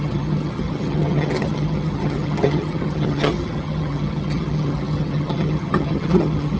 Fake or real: fake